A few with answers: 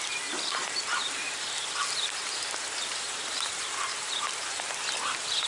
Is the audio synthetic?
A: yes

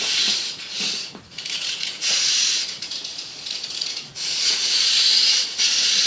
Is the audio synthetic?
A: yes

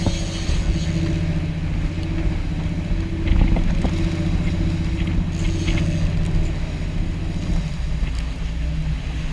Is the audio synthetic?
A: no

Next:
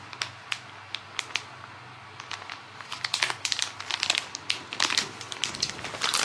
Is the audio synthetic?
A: no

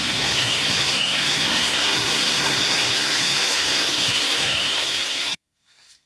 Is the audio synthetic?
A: yes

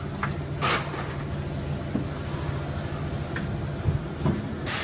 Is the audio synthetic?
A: no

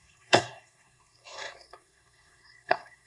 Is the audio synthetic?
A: yes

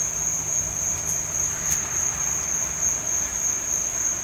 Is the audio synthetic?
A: no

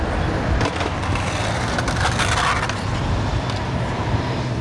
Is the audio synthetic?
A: no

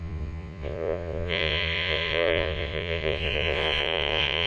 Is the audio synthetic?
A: yes